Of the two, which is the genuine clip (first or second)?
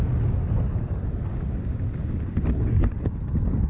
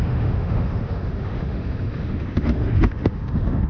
first